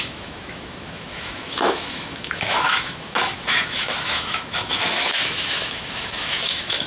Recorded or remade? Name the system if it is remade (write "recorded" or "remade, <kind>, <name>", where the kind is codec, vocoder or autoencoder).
remade, autoencoder, DAC-VAE